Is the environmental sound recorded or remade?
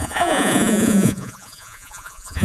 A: remade